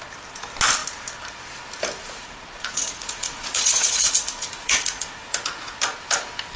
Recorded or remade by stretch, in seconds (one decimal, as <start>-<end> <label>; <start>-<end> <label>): 0.0-2.0 recorded; 2.0-5.3 remade; 5.3-6.6 recorded